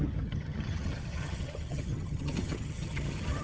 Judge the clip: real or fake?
fake